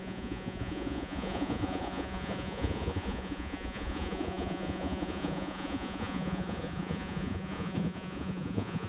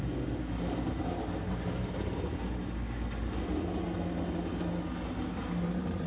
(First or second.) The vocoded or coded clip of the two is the first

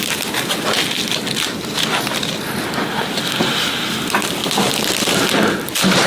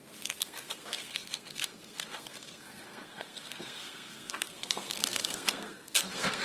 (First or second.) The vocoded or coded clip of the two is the second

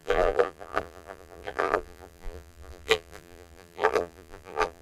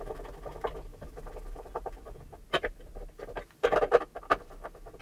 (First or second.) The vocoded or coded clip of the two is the first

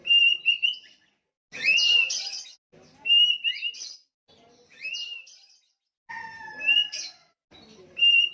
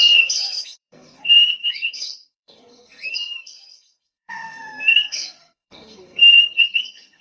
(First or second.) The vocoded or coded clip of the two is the second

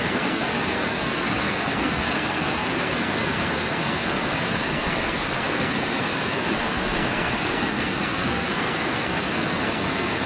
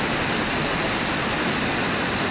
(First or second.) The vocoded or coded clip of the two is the first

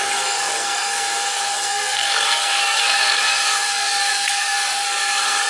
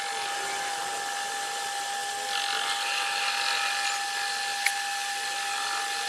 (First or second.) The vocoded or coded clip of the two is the first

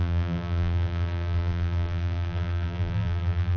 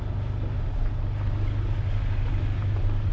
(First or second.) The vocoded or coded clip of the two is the first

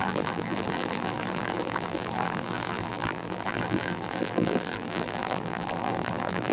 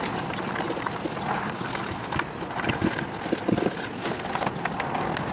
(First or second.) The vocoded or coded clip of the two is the first